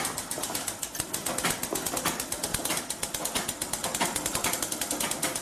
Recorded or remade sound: recorded